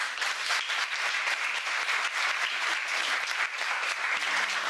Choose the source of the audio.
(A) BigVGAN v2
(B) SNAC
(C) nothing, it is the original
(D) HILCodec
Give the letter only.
C